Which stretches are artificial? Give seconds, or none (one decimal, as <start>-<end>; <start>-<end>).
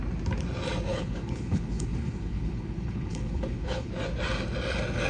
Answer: 0.9-3.9